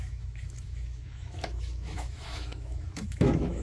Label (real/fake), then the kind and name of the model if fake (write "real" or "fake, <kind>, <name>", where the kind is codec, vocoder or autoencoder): fake, autoencoder, DAC-VAE